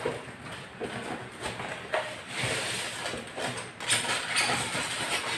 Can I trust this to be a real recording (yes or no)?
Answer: yes